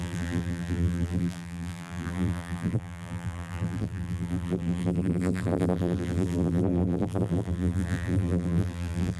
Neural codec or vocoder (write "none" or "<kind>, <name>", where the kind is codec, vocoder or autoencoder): vocoder, BigVGAN v2